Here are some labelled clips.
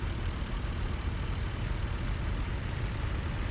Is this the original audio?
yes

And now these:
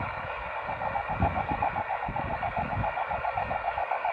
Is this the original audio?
no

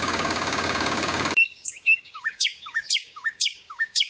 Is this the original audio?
no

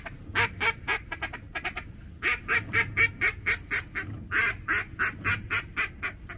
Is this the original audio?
yes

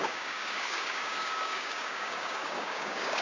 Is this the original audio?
no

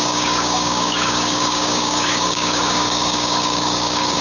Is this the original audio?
no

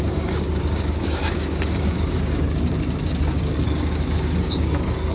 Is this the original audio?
no